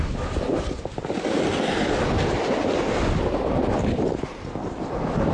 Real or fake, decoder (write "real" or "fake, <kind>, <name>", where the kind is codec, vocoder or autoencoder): fake, vocoder, BigVGAN v2